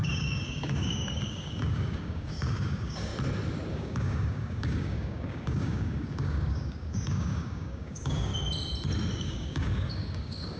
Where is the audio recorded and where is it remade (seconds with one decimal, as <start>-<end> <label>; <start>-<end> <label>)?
0.0-3.1 remade; 3.1-3.7 recorded; 3.7-8.3 remade; 8.3-9.2 recorded; 9.2-10.6 remade